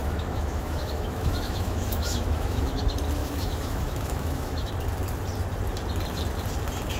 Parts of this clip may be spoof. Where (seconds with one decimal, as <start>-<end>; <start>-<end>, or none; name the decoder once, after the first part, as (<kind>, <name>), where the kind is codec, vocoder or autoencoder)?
0.0-2.8 (autoencoder, DAC-VAE); 3.2-4.7